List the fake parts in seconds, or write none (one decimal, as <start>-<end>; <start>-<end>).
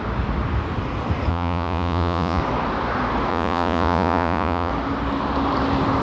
1.3-2.4; 3.3-4.7